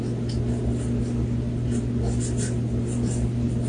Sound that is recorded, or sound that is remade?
recorded